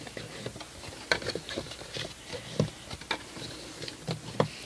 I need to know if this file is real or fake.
real